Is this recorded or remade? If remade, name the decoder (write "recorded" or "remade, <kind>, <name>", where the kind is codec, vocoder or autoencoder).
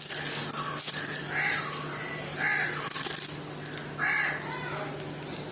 recorded